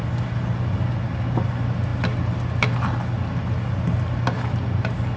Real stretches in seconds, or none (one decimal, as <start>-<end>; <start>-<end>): 0.0-1.9; 3.2-5.2

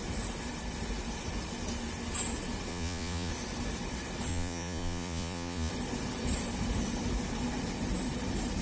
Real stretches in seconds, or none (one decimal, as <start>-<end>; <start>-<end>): 0.0-2.7; 3.3-4.3; 5.7-8.6

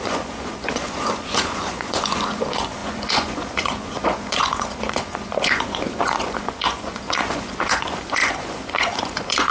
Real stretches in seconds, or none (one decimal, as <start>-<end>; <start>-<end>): none

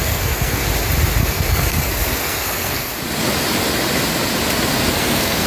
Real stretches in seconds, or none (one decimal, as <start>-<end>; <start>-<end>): 0.6-1.2; 2.9-4.9

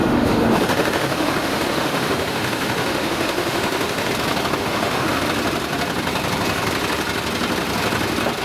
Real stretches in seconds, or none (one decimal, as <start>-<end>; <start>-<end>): 4.1-4.6; 5.2-8.4

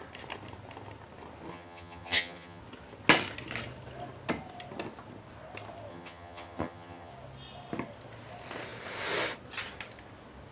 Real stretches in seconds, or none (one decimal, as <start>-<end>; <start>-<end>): 0.0-1.5; 2.6-5.9; 7.1-10.5